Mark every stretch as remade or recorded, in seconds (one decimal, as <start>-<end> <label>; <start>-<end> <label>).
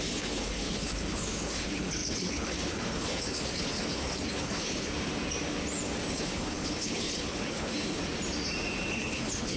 0.0-4.9 remade; 4.9-6.1 recorded; 6.1-8.0 remade; 8.0-8.9 recorded; 8.9-9.6 remade